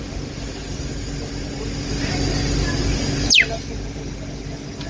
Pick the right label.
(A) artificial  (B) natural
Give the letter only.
B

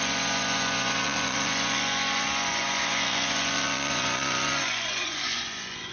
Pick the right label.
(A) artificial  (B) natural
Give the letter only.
A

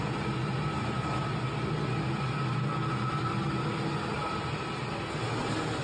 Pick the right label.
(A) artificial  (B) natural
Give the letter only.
B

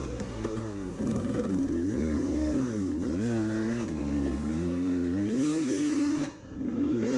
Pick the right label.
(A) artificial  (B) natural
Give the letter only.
A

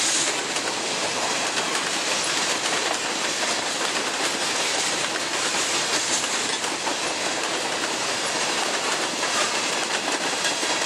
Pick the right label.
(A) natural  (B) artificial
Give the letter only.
B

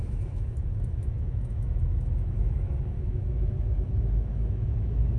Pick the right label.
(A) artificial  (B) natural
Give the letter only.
A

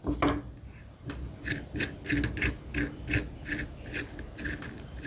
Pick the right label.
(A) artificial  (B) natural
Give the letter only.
B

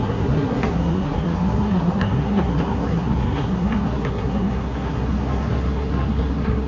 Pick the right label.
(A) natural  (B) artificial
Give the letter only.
B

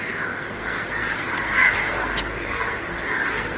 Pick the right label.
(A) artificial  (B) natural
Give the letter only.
A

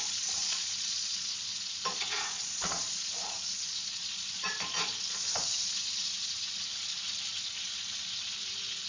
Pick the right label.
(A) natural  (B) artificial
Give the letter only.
B